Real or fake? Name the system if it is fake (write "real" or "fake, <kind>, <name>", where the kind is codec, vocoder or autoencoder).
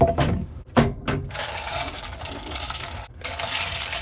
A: fake, codec, DAC